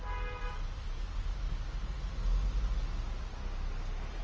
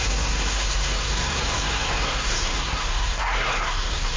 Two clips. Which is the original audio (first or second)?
first